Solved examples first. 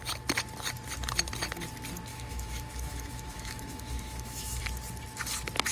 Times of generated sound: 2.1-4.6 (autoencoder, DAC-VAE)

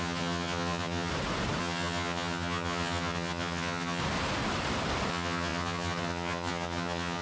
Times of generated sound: 0.0-1.1 (vocoder, HiFi-GAN); 1.6-4.0; 5.1-7.2